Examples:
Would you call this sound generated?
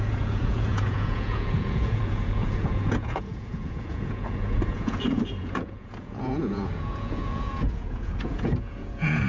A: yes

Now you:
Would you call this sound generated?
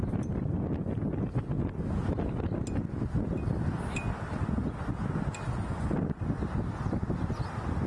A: no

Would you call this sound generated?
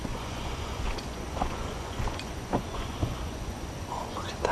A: yes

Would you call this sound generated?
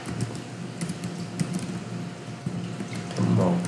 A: no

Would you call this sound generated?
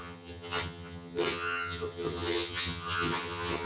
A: yes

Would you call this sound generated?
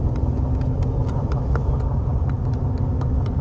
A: no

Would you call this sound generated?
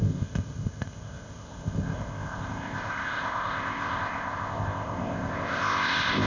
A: yes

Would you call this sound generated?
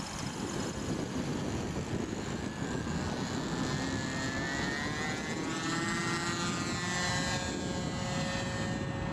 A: no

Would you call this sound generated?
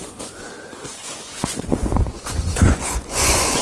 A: yes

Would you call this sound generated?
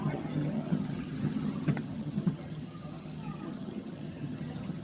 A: yes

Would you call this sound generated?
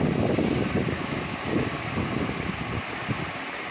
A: no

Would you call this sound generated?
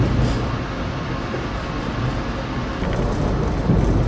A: no